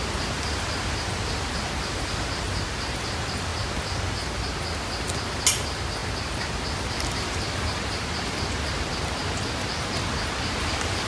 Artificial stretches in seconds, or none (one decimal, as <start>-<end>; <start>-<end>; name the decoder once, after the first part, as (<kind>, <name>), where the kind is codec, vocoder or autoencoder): none